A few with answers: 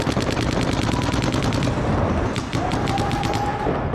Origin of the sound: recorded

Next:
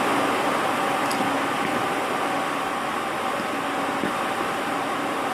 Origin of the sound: recorded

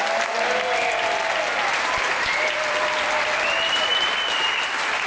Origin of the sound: recorded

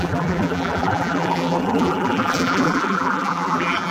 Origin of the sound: remade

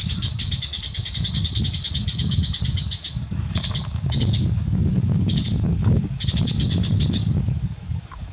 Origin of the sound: remade